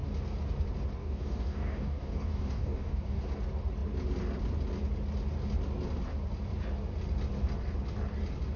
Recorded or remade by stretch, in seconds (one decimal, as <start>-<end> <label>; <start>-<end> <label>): 0.0-1.0 recorded; 1.0-3.2 remade; 3.2-8.6 recorded